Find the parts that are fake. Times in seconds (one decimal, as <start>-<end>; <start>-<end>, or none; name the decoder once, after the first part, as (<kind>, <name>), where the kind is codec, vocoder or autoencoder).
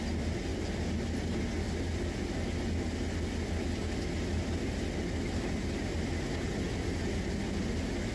0.5-1.0 (vocoder, BigVGAN v2)